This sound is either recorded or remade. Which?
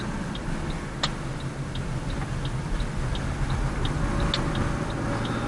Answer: recorded